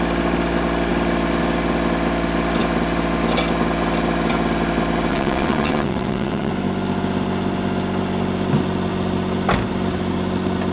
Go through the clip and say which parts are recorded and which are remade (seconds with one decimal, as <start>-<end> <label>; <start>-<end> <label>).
0.0-5.1 recorded; 5.1-6.5 remade; 6.5-10.7 recorded